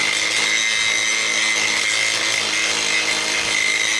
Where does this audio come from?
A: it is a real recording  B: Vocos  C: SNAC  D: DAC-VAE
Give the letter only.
A